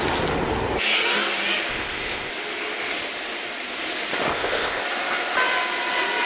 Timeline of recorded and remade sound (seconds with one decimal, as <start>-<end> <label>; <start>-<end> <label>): 0.0-1.7 recorded; 1.7-2.3 remade; 2.3-4.3 recorded; 4.3-4.8 remade; 4.8-6.3 recorded